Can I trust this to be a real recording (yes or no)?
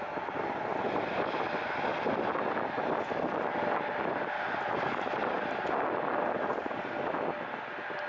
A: yes